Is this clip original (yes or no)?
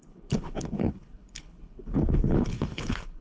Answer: no